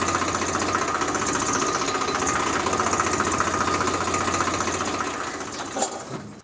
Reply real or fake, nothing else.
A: real